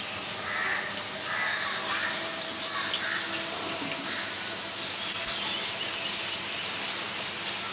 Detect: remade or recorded recorded